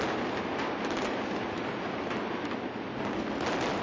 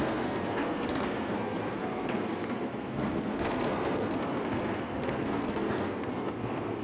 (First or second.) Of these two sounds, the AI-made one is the second